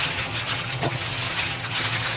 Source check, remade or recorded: remade